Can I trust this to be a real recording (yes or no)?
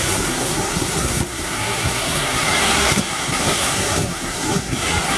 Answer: no